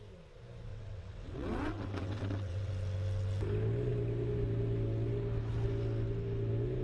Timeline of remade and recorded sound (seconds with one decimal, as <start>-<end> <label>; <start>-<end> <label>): 0.0-0.7 recorded; 0.7-2.7 remade; 2.7-6.8 recorded